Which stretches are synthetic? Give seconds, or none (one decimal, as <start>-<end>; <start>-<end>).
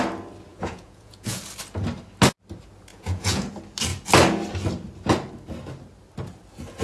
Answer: 0.5-1.4; 2.9-3.5